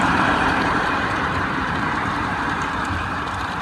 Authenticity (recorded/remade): remade